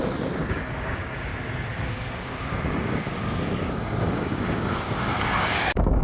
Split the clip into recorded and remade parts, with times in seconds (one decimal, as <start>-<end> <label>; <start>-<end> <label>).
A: 0.0-0.5 recorded; 0.5-1.3 remade; 1.3-1.9 recorded; 1.9-3.1 remade; 3.1-3.6 recorded; 3.6-6.0 remade

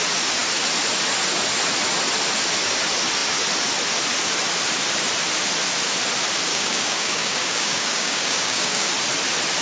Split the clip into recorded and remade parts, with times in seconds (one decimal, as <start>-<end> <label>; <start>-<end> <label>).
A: 0.0-6.5 recorded; 6.5-8.9 remade; 8.9-9.6 recorded

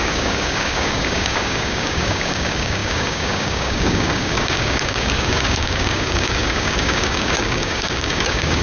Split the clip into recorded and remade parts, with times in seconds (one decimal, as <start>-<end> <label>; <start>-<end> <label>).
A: 0.0-8.6 remade

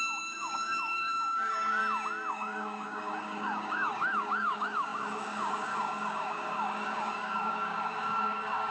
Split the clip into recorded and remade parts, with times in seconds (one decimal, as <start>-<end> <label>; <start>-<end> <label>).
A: 0.0-1.8 remade; 1.8-2.3 recorded; 2.3-8.7 remade

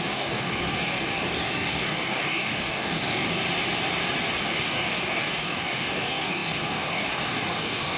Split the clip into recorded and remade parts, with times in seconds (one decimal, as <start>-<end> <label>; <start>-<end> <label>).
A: 0.0-3.4 remade; 3.4-4.4 recorded; 4.4-8.0 remade

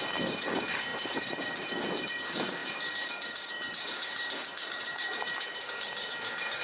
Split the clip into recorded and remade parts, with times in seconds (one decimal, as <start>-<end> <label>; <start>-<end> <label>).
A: 0.0-6.6 remade

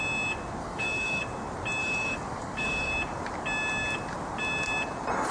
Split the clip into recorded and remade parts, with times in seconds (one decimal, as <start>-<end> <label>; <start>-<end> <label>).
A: 0.0-0.6 recorded; 0.6-1.2 remade; 1.2-1.8 recorded; 1.8-2.9 remade; 2.9-5.3 recorded

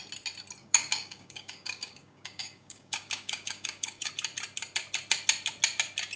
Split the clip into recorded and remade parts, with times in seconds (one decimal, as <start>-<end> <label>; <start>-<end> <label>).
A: 0.0-0.6 recorded; 0.6-4.1 remade; 4.1-6.2 recorded